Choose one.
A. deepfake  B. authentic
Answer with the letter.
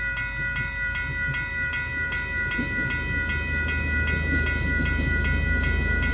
B